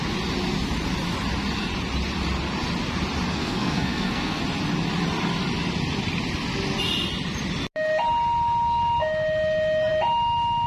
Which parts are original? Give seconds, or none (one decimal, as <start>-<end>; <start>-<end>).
0.0-3.3; 4.4-10.7

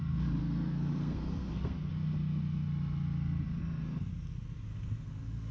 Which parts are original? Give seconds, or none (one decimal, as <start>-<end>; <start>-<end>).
0.0-0.4; 1.9-3.6; 4.1-4.7